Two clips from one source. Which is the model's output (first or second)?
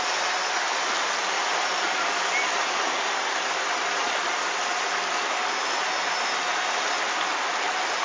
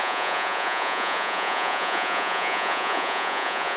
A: second